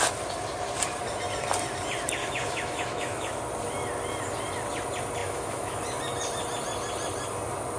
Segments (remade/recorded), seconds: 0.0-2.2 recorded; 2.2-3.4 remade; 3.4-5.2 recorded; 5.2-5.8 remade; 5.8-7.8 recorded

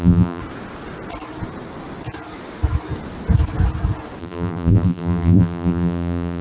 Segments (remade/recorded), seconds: 0.0-0.4 remade; 0.4-4.2 recorded; 4.2-6.4 remade

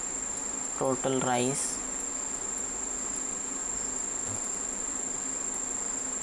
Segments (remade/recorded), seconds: 0.0-6.2 recorded